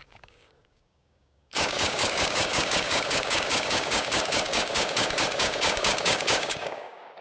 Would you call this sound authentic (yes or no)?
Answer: no